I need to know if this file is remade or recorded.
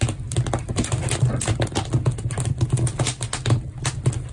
recorded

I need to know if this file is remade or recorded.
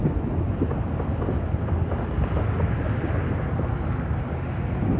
recorded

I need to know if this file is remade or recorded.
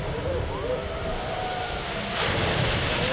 recorded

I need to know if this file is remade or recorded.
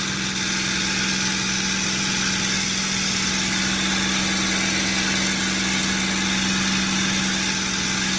recorded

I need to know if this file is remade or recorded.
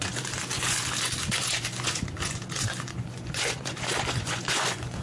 remade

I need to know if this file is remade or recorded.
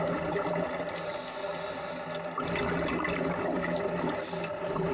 recorded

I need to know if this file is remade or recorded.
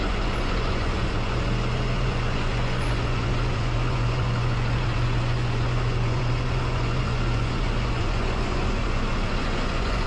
remade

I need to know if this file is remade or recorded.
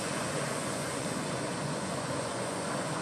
remade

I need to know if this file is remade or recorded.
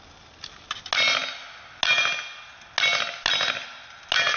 recorded